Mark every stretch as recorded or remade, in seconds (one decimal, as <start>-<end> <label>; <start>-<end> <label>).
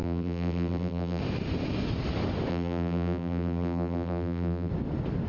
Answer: 0.0-1.2 remade; 1.2-2.5 recorded; 2.5-4.7 remade; 4.7-5.3 recorded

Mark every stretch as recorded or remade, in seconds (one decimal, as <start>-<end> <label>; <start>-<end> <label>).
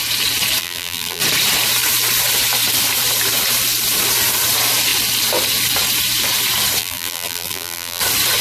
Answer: 0.0-0.6 recorded; 0.6-1.2 remade; 1.2-6.8 recorded; 6.8-8.0 remade; 8.0-8.4 recorded